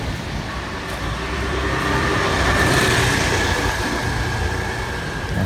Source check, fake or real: fake